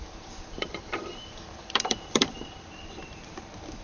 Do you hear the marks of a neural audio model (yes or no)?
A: yes